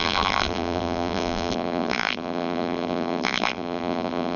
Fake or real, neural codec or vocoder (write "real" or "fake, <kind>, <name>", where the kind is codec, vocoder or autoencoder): fake, vocoder, BigVGAN v2